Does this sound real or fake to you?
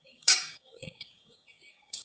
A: fake